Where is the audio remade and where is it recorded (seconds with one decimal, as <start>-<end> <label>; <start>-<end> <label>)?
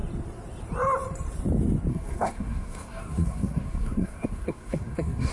0.0-1.9 recorded; 1.9-5.3 remade